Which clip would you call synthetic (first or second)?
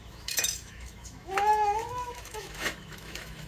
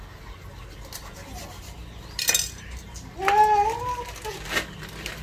first